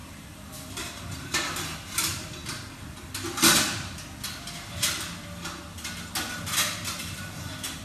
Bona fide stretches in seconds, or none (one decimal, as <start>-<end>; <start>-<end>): 2.4-7.0